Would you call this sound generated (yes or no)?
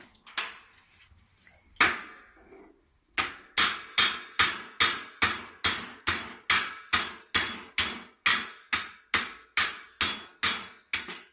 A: no